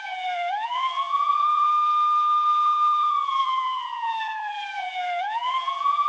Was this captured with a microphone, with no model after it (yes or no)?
no